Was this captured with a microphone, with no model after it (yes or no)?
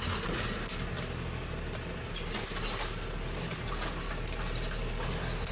yes